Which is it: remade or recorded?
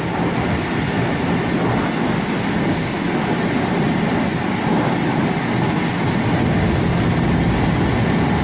recorded